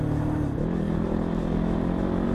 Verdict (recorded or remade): recorded